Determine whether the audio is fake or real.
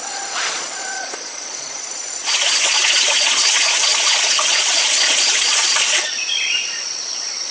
fake